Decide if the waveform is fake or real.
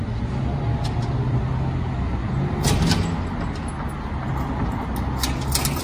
real